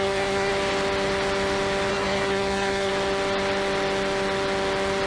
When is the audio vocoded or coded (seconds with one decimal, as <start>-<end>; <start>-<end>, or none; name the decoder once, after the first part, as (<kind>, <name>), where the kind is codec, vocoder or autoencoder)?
0.0-0.5 (codec, SNAC); 1.9-2.9